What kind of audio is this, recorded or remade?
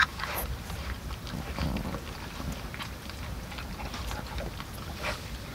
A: recorded